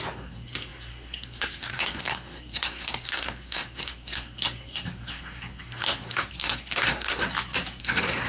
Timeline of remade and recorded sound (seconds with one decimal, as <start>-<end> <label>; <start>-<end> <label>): 0.0-7.2 remade; 7.2-7.8 recorded; 7.8-8.3 remade